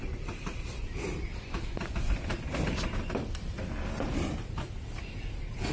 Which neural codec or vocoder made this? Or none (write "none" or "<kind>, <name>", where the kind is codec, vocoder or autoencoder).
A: none